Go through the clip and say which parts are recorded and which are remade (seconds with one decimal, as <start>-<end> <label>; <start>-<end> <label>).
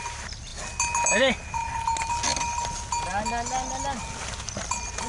0.0-5.1 recorded